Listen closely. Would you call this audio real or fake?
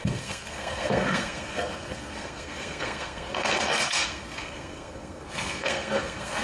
fake